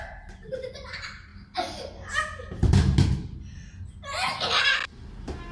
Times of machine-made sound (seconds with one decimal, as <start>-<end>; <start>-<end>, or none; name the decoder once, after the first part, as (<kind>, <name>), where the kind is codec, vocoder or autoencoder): 0.0-1.3 (vocoder, BigVGAN v2); 4.6-5.5